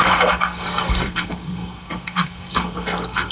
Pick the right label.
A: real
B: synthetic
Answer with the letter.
B